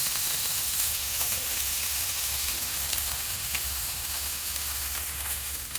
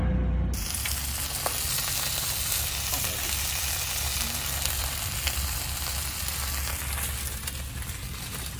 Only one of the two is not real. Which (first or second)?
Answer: first